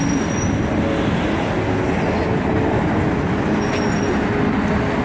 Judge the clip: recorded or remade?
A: recorded